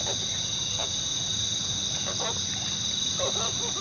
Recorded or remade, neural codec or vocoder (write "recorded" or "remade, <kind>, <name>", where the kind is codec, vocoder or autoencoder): recorded